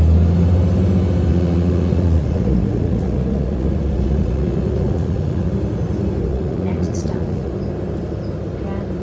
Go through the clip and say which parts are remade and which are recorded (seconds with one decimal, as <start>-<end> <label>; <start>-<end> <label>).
0.0-1.3 recorded; 1.3-5.5 remade; 5.5-6.3 recorded; 6.3-7.5 remade; 7.5-9.0 recorded